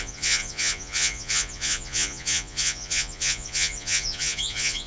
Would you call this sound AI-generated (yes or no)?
yes